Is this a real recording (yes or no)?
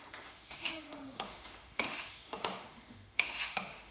no